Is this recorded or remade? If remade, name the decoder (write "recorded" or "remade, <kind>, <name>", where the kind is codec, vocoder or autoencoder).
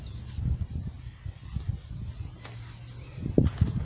recorded